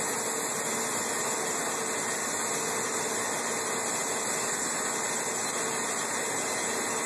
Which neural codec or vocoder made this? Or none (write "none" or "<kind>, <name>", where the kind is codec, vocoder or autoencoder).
none